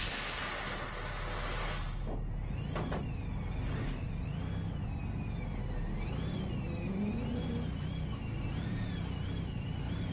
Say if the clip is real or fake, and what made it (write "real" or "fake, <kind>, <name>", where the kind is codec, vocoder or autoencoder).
real